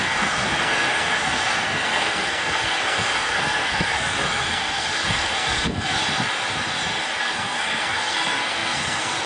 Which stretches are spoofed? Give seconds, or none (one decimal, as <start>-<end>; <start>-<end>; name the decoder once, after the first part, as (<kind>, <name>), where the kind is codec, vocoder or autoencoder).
0.0-6.0 (codec, SNAC); 7.2-9.3